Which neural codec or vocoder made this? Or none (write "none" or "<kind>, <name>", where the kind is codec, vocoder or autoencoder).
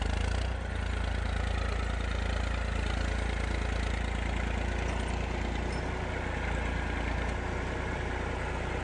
none